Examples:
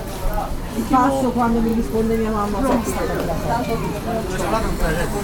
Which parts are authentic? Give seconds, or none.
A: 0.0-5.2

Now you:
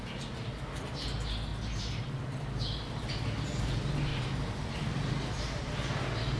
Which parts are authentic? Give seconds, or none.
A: 0.0-1.5; 2.0-4.1; 5.1-6.4

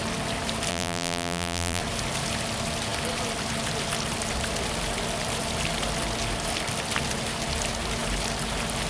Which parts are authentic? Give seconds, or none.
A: 0.0-0.7; 1.8-8.9

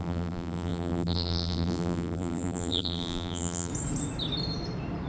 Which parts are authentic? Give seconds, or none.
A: 3.7-5.1